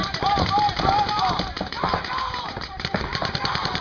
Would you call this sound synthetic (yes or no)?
yes